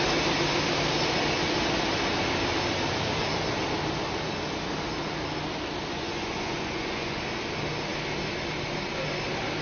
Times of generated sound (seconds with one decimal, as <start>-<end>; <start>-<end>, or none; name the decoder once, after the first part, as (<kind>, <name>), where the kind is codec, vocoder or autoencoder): 5.9-7.2 (vocoder, Vocos)